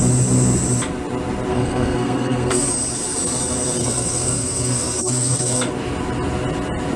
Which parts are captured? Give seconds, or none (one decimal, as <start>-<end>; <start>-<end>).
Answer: 0.0-1.5; 2.7-3.8; 5.7-7.0